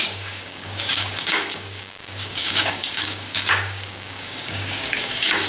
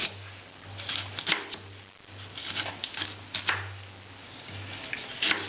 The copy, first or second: first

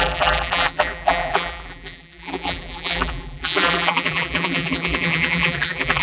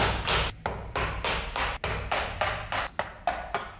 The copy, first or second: first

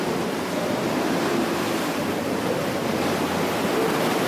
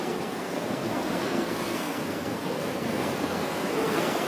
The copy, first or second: second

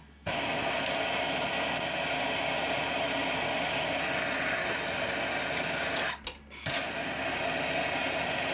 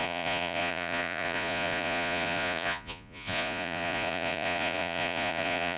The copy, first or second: second